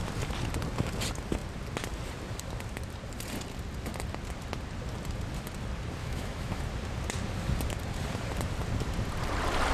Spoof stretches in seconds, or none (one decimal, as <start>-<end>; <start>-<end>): 6.0-6.6